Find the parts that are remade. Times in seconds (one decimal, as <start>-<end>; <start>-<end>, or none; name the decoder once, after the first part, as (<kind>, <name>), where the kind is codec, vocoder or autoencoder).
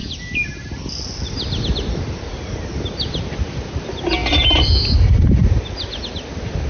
none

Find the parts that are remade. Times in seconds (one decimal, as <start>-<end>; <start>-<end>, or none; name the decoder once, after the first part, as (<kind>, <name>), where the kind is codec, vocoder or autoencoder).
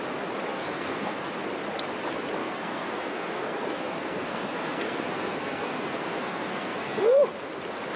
0.5-1.3 (codec, SNAC); 2.4-7.2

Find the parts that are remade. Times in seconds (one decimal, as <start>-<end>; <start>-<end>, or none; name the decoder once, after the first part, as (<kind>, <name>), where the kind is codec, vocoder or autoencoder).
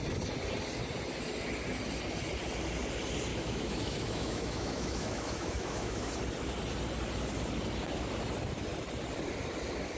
3.3-6.1 (autoencoder, DAC-VAE)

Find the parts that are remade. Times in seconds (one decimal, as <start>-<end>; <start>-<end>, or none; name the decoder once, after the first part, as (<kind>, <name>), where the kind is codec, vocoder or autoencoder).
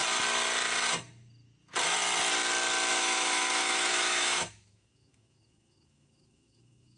2.9-7.0 (autoencoder, DAC-VAE)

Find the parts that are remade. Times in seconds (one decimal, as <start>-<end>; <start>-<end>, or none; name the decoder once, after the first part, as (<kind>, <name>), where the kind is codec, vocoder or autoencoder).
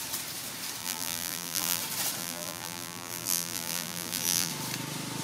0.8-1.8 (vocoder, BigVGAN v2); 2.2-4.5